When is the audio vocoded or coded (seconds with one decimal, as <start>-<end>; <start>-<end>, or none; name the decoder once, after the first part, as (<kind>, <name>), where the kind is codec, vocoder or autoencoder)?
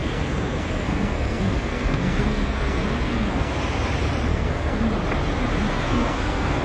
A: 0.0-3.5 (codec, SNAC); 4.3-4.8; 5.7-6.6